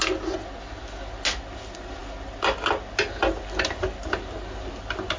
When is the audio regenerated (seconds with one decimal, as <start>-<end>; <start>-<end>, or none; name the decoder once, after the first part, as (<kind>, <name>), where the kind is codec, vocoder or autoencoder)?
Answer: none